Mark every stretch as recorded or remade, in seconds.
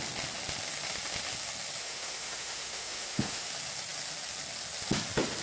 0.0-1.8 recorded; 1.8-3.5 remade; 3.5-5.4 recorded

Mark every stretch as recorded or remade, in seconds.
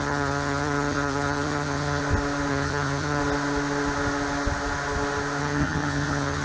0.0-2.0 remade; 2.0-2.5 recorded; 2.5-3.2 remade; 3.2-5.4 recorded; 5.4-6.4 remade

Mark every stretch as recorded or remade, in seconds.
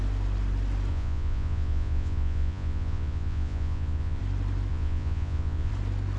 0.0-0.9 recorded; 0.9-4.2 remade; 4.2-4.7 recorded; 4.7-5.7 remade; 5.7-6.2 recorded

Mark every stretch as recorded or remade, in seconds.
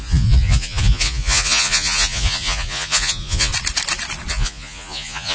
0.0-3.5 remade; 3.5-4.3 recorded; 4.3-5.3 remade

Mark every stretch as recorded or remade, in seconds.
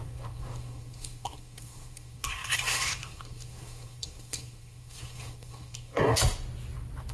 0.0-6.2 remade; 6.2-7.1 recorded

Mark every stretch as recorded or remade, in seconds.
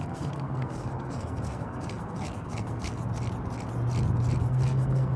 0.0-3.0 remade; 3.0-4.4 recorded; 4.4-5.2 remade